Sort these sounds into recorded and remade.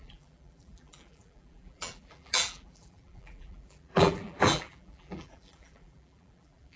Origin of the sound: remade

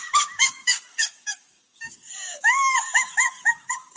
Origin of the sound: remade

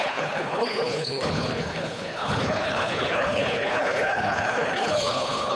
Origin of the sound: remade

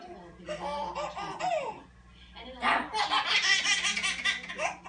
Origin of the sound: recorded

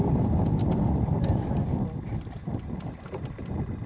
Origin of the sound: recorded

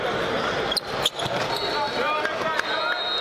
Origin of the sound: recorded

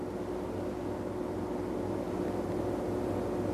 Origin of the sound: recorded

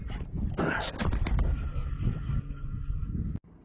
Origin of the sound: recorded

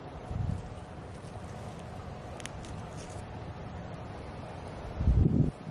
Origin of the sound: recorded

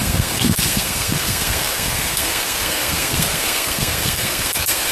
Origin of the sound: remade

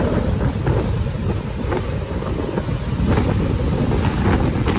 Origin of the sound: recorded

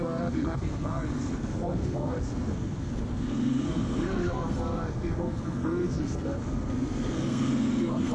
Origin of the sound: remade